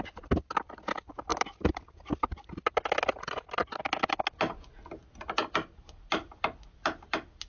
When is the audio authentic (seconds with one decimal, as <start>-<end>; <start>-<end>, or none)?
0.0-7.5